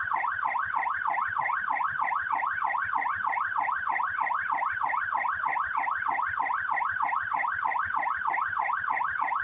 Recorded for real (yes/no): no